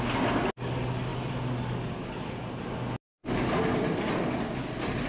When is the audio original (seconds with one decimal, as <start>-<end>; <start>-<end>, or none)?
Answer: 0.0-5.1